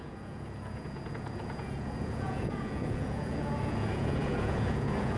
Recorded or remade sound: remade